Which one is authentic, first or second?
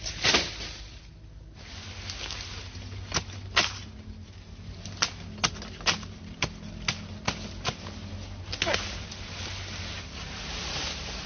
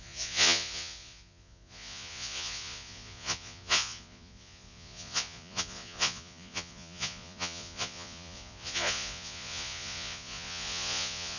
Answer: first